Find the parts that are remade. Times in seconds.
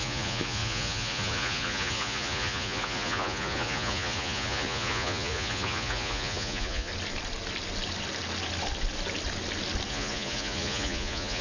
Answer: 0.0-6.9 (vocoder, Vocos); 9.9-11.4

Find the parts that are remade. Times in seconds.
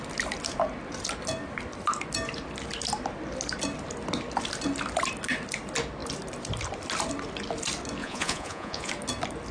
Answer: 8.0-8.9 (vocoder, Vocos)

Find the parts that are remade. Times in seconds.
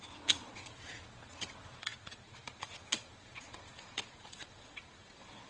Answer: 0.0-5.5 (vocoder, Vocos)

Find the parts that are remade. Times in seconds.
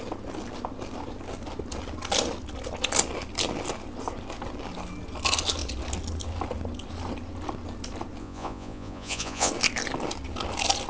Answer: 8.2-9.5 (vocoder, Vocos)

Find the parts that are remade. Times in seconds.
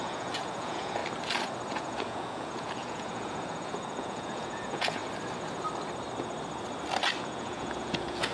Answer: 0.0-1.0 (vocoder, Vocos); 1.7-5.0; 7.2-8.3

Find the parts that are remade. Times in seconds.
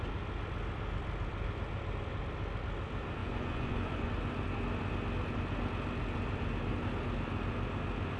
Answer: 3.2-4.1 (vocoder, Vocos)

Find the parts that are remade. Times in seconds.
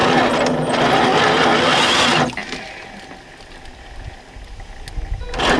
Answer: none